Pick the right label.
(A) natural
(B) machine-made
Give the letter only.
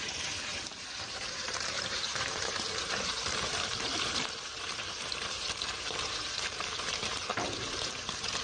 B